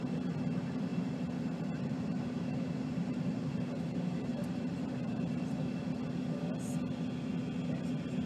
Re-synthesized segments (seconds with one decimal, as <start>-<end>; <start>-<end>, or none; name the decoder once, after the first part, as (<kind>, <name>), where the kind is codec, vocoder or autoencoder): 0.9-5.8 (vocoder, BigVGAN v2)